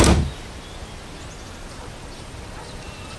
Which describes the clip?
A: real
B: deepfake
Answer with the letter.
A